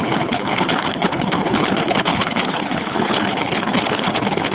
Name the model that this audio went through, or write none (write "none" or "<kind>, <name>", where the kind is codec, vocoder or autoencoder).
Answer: codec, HILCodec